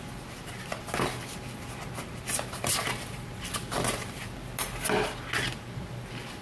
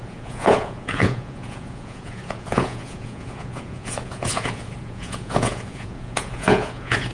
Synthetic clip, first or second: second